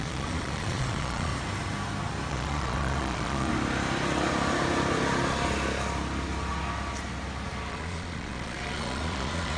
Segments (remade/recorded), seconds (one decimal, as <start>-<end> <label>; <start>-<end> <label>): 0.0-1.3 remade; 1.3-2.3 recorded; 2.3-3.5 remade; 3.5-7.7 recorded; 7.7-9.6 remade